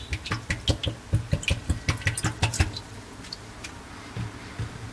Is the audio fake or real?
real